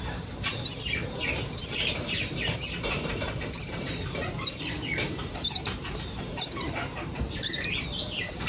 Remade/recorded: remade